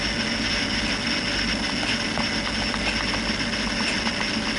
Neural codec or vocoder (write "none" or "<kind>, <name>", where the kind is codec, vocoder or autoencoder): none